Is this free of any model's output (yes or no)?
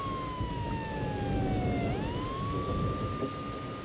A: yes